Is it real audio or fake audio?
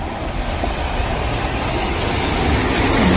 real